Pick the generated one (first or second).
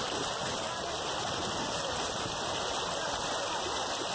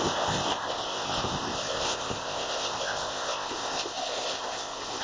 second